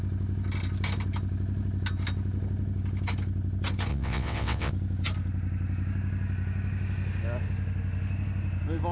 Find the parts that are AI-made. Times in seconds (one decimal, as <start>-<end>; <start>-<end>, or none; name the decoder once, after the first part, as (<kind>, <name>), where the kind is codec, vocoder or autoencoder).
3.9-4.7 (vocoder, WaveNeXt)